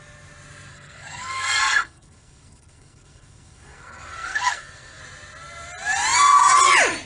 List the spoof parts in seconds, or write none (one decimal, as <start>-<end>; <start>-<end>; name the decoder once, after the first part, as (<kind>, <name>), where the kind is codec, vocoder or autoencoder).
0.7-5.0 (codec, SNAC)

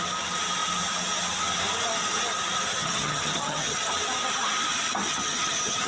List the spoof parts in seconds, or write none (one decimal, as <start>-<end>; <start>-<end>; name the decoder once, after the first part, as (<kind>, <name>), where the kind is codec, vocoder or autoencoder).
2.7-3.9 (vocoder, HiFi-GAN); 5.0-5.9

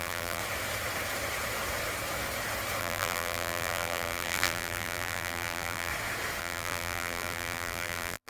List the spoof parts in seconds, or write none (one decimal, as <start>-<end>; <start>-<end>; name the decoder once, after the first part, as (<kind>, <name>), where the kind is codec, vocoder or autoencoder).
0.0-0.4 (vocoder, BigVGAN v2); 2.8-5.9; 6.4-8.3

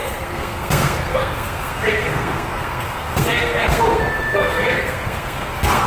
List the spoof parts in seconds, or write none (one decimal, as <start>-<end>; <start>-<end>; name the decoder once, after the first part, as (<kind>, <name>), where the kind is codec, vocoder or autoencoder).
0.0-5.9 (codec, SNAC)